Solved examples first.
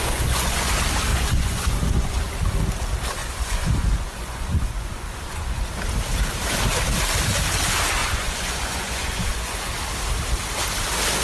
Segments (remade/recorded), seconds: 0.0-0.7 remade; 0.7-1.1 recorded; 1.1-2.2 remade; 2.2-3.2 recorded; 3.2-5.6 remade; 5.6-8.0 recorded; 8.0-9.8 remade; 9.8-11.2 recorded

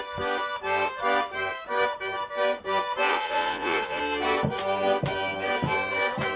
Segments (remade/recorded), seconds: 0.0-3.1 recorded; 3.1-4.0 remade; 4.0-6.4 recorded

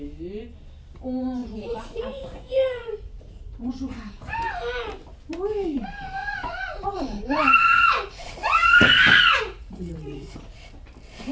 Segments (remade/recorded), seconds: 0.0-1.4 recorded; 1.4-3.7 remade; 3.7-6.2 recorded; 6.2-10.7 remade; 10.7-11.3 recorded

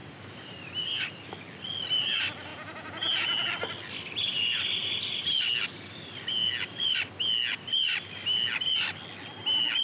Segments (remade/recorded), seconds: 0.0-2.5 recorded; 2.5-3.5 remade; 3.5-9.8 recorded

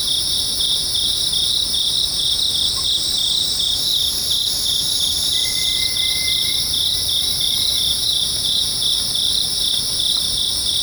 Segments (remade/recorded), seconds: 0.0-7.7 recorded; 7.7-8.9 remade; 8.9-10.8 recorded

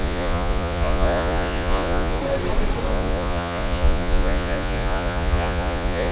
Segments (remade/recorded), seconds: 0.0-2.2 remade; 2.2-2.9 recorded; 2.9-6.1 remade

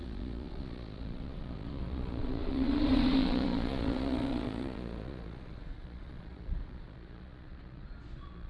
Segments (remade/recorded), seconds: 0.0-8.5 remade

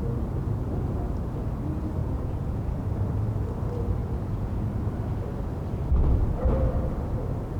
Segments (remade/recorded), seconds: 0.0-2.0 recorded; 2.0-2.8 remade; 2.8-4.0 recorded; 4.0-4.7 remade; 4.7-7.6 recorded